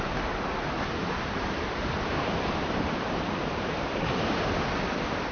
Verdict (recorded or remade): remade